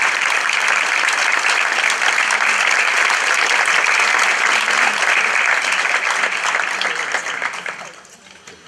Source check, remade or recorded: recorded